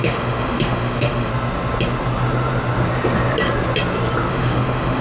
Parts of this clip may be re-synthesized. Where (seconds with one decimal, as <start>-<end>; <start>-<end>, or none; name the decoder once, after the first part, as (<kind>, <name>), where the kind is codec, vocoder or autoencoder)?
0.0-1.3 (autoencoder, DAC-VAE); 4.3-5.0